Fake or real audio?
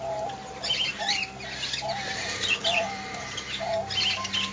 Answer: real